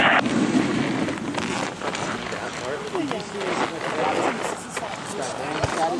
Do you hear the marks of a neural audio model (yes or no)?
no